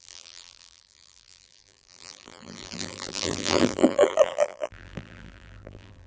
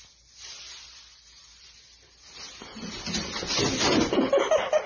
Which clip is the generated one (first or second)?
first